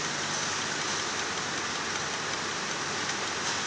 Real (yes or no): yes